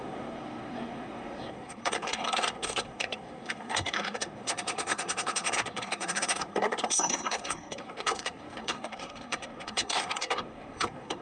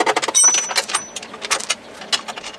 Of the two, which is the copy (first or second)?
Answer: first